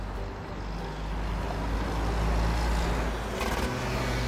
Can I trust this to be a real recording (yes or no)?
yes